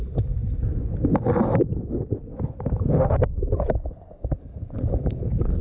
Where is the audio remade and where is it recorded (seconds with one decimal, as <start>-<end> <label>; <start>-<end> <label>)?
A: 0.0-2.9 recorded; 2.9-3.4 remade; 3.4-5.6 recorded